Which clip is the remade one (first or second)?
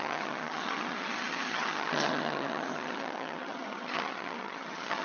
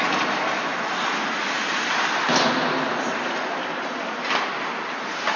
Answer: first